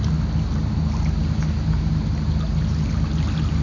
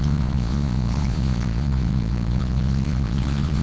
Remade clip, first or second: second